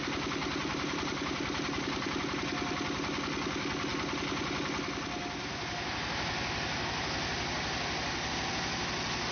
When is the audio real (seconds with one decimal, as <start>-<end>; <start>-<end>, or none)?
0.0-0.4; 2.2-9.3